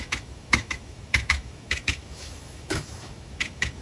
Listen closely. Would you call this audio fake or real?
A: fake